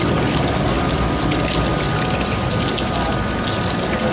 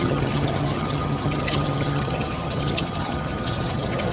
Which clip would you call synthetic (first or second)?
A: second